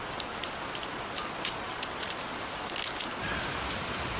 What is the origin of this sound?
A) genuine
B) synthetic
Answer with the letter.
A